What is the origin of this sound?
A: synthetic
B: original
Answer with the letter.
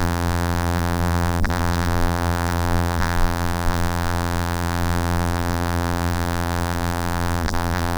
A